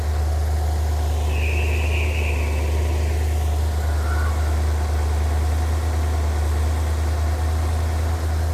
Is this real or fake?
real